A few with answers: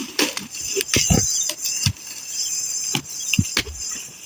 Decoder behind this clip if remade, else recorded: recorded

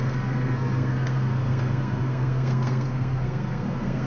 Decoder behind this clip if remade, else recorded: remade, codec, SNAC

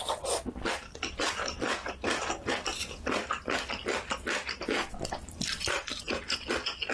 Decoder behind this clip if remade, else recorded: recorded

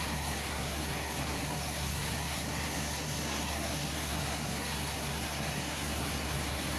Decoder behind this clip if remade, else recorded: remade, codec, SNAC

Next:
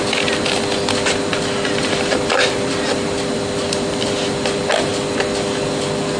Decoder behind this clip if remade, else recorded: recorded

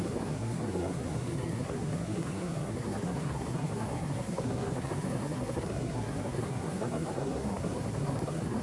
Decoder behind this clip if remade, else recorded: remade, codec, SNAC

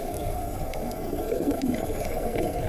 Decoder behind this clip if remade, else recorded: remade, codec, SNAC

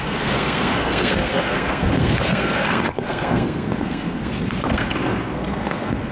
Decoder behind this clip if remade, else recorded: remade, codec, SNAC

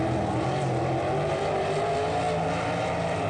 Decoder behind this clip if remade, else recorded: recorded